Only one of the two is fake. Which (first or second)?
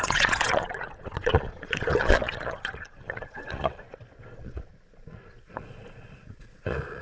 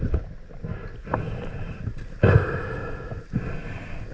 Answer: first